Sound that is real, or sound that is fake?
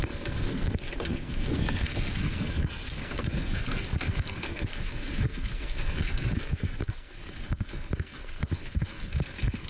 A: fake